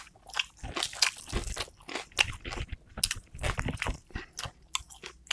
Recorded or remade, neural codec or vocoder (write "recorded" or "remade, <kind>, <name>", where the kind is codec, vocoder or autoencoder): recorded